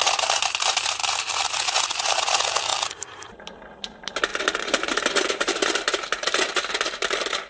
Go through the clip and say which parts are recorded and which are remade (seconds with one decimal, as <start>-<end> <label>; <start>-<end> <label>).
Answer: 0.0-2.7 recorded; 2.7-3.5 remade; 3.5-4.3 recorded; 4.3-7.5 remade